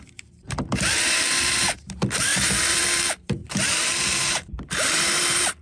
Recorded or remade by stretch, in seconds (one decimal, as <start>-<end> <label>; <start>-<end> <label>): 0.0-5.6 remade